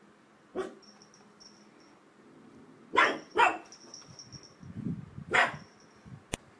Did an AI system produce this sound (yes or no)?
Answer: no